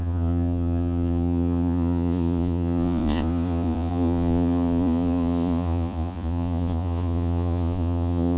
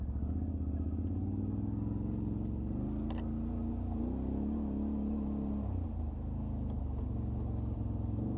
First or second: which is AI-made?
first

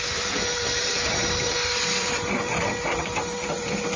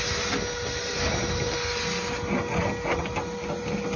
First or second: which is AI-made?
first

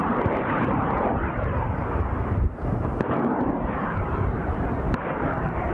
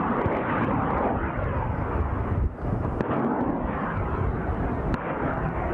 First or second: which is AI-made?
first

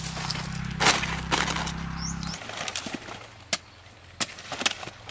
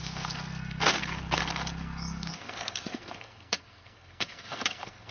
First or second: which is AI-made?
second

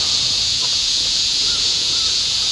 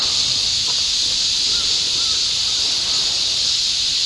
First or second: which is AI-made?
first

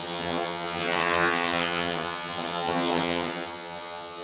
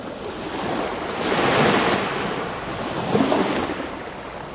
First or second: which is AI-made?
first